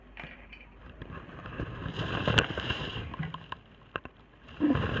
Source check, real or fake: fake